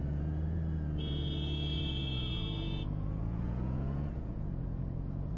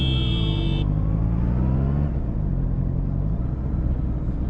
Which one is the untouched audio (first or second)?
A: second